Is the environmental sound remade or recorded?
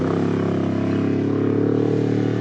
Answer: recorded